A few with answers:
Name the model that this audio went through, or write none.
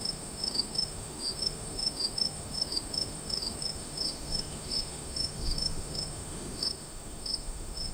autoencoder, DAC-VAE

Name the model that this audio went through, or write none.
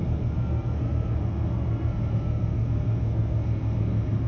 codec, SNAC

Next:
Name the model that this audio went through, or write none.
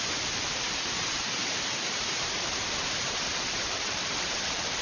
vocoder, BigVGAN v2